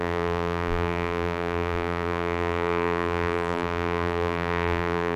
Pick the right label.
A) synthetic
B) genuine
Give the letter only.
A